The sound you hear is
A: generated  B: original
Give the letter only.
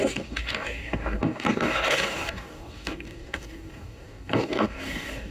A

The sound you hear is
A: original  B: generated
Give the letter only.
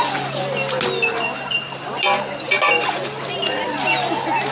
A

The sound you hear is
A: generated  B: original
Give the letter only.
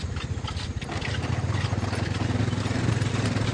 B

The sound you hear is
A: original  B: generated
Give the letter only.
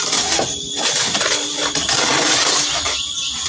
A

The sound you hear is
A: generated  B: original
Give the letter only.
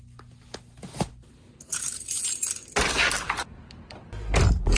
B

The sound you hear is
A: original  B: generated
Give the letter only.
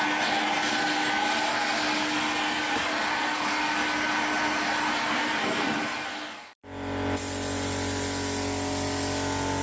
A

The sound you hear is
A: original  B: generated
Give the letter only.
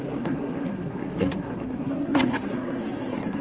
B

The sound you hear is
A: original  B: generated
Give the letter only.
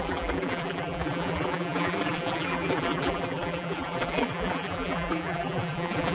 B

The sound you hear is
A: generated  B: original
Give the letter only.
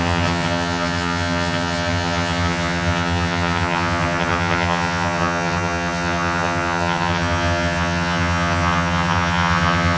A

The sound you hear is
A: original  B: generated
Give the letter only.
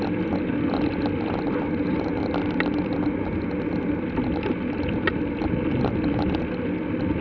A